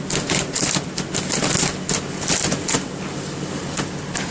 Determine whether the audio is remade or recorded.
recorded